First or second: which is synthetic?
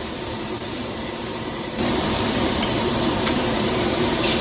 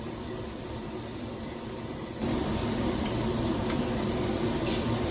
first